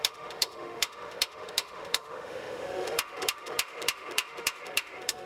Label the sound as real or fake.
fake